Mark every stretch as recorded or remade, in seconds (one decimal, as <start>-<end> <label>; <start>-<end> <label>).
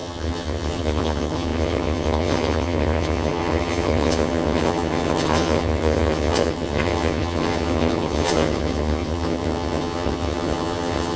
0.0-11.2 remade